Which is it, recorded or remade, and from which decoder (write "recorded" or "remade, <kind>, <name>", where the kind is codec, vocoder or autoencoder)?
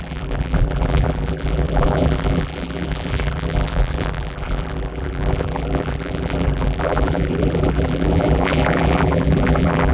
remade, vocoder, BigVGAN v2